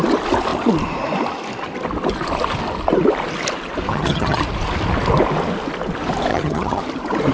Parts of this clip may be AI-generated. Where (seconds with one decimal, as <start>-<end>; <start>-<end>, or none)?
3.9-4.4; 6.3-6.8